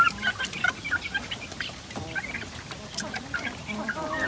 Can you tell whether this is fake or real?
real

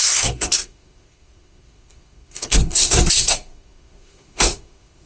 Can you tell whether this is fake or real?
fake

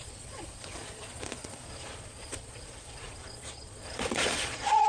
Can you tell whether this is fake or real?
fake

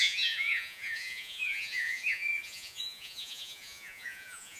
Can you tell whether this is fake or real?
fake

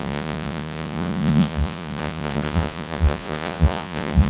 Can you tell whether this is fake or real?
fake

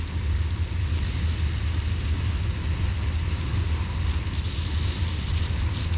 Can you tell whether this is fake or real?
real